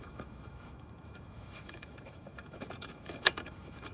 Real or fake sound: fake